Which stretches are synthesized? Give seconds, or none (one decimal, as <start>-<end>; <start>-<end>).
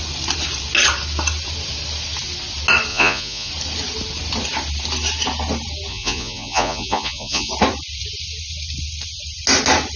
2.9-3.5; 5.9-7.5